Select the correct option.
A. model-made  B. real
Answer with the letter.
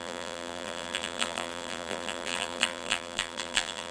A